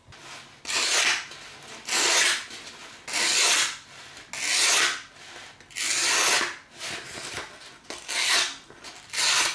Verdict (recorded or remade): recorded